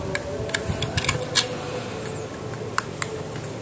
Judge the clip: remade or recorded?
recorded